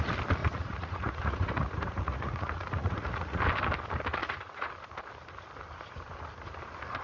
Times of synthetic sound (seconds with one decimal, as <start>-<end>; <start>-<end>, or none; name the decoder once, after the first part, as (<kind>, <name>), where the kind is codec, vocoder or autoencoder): 0.4-3.4 (vocoder, Vocos); 4.2-4.7